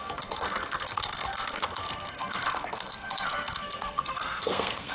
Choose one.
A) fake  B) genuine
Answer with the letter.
A